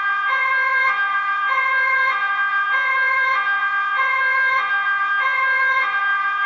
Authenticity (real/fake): fake